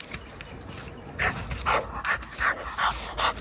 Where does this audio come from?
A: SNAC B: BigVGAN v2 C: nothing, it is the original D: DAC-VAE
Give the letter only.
C